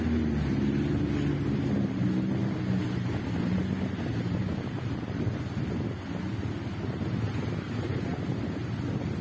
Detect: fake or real real